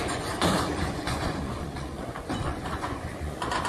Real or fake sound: fake